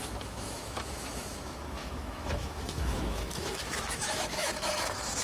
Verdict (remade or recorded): remade